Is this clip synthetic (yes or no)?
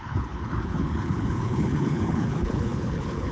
yes